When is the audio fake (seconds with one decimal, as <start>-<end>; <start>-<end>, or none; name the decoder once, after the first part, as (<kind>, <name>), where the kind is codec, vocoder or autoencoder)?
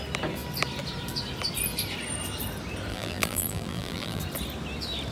2.9-4.2 (vocoder, BigVGAN v2)